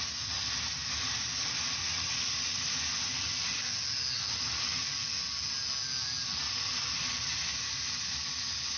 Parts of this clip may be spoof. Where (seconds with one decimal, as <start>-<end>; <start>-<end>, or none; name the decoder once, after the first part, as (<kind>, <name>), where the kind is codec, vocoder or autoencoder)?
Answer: 1.8-2.7 (vocoder, Vocos)